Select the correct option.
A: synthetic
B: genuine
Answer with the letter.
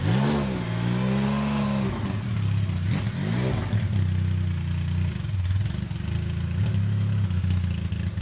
B